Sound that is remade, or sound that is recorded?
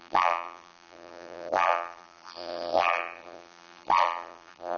remade